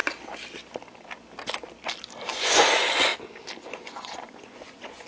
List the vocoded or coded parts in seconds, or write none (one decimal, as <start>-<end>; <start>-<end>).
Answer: 2.3-3.1; 3.7-5.1